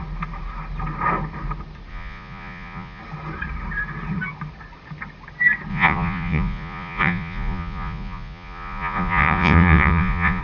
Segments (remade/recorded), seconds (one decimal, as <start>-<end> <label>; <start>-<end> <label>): 0.0-1.9 recorded; 1.9-3.0 remade; 3.0-5.7 recorded; 5.7-10.4 remade